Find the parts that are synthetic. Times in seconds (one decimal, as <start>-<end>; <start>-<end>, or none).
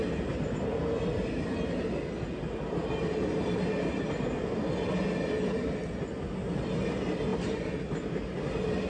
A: none